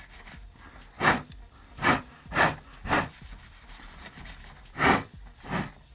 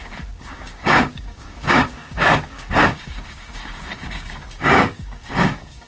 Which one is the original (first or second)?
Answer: first